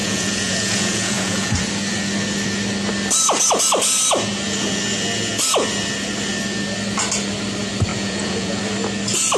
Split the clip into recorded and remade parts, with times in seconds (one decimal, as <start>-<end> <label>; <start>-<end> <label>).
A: 0.0-1.7 remade; 1.7-7.9 recorded; 7.9-8.6 remade; 8.6-9.4 recorded